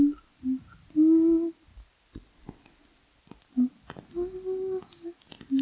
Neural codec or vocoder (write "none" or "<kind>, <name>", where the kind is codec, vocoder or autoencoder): none